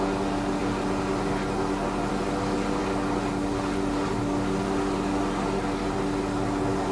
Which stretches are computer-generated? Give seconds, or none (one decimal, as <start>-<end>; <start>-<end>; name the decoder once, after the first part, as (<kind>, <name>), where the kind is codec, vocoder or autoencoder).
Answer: none